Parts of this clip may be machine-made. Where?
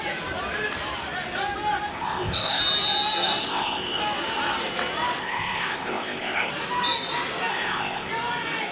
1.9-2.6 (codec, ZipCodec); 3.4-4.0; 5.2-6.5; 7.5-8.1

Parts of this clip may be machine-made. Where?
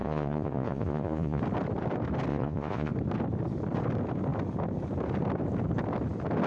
0.0-1.4 (vocoder, Vocos); 2.3-2.9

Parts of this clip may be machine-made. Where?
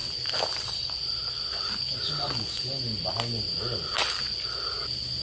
0.0-3.1 (vocoder, BigVGAN v2); 3.9-4.4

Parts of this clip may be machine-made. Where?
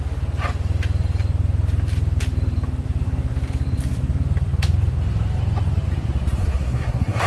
6.4-7.3 (codec, SNAC)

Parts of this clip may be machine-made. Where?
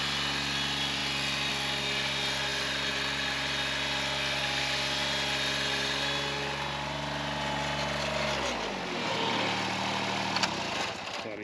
none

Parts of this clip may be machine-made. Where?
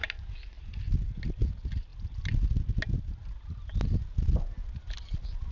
4.6-5.5 (vocoder, BigVGAN v2)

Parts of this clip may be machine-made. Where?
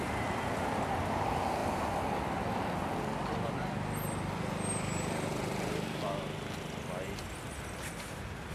5.3-6.0 (vocoder, BigVGAN v2)